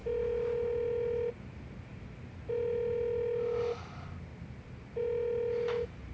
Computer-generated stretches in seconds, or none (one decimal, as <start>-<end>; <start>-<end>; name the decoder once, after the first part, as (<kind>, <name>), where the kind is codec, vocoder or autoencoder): none